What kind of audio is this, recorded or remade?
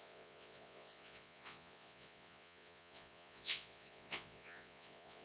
remade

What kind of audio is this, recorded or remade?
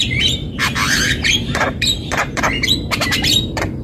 remade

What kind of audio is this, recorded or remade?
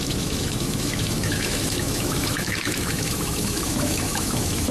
remade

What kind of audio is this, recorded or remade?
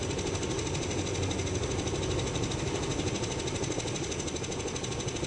recorded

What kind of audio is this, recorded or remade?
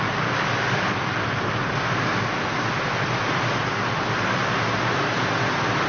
recorded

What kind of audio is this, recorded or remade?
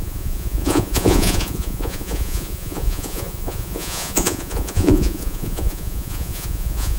remade